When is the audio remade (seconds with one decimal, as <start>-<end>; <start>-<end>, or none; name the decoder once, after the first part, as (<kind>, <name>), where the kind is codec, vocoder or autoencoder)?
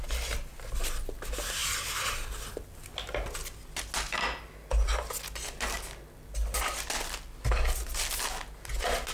none